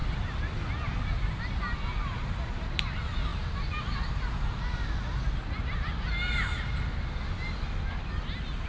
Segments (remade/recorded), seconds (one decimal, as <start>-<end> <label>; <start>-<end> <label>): 0.0-8.7 recorded